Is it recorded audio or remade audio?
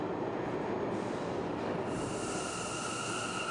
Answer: recorded